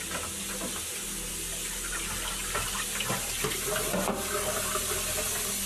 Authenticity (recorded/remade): recorded